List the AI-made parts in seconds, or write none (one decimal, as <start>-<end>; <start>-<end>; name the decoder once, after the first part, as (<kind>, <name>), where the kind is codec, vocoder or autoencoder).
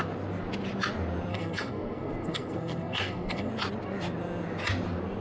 1.3-3.5 (codec, SNAC)